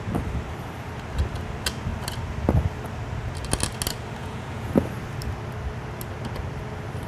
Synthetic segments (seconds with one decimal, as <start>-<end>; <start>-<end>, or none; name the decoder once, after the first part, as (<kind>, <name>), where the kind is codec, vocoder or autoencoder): 4.2-4.7 (vocoder, Vocos)